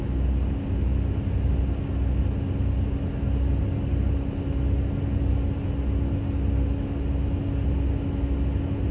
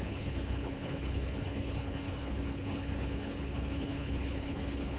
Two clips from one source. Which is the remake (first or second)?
second